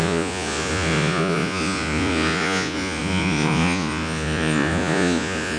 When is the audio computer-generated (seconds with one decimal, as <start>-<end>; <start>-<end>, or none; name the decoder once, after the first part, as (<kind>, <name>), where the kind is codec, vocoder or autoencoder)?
0.0-5.6 (vocoder, Vocos)